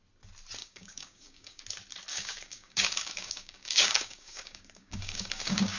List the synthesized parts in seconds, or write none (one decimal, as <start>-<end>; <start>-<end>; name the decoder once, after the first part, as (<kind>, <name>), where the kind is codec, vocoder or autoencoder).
0.6-1.6 (codec, DAC); 2.1-5.8